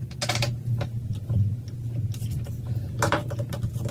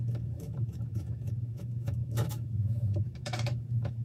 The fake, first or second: second